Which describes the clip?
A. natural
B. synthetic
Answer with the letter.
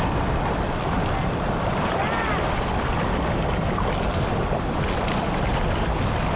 A